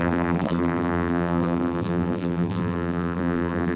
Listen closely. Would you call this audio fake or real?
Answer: fake